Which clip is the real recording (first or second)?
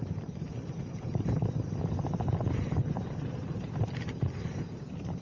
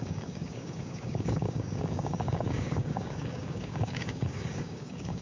first